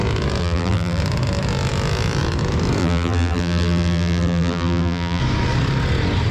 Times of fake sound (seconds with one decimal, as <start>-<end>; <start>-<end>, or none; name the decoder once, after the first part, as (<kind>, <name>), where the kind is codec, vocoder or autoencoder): 0.4-1.0 (vocoder, BigVGAN v2); 2.8-5.2